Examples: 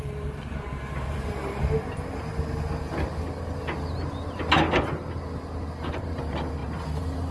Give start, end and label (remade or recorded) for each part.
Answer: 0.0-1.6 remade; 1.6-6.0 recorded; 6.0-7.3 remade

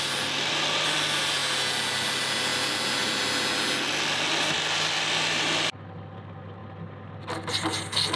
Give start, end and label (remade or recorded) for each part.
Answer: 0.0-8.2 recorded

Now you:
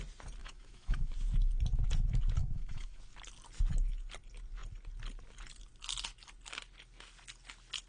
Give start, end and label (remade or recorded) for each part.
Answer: 0.0-0.4 recorded; 0.4-1.0 remade; 1.0-2.4 recorded; 2.4-3.0 remade; 3.0-7.9 recorded